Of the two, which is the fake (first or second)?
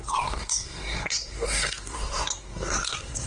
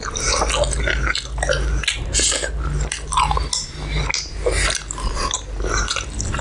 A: first